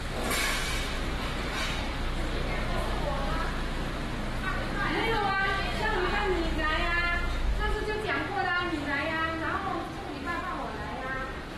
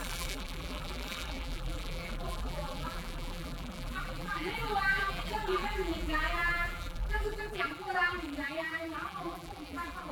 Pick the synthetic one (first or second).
second